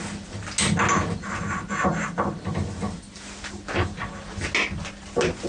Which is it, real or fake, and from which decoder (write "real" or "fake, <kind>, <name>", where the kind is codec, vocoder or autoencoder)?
real